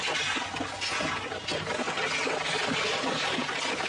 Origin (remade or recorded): recorded